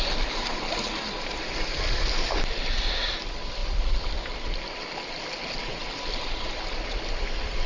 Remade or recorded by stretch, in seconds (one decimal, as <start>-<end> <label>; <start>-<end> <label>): 0.0-7.7 recorded